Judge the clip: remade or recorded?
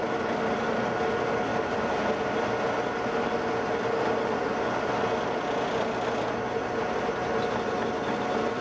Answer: recorded